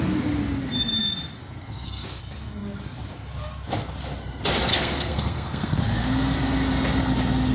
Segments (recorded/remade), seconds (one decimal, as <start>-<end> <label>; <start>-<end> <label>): 0.0-1.4 recorded; 1.4-2.2 remade; 2.2-4.7 recorded; 4.7-5.8 remade; 5.8-7.5 recorded